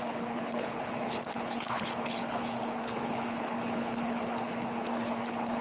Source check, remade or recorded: remade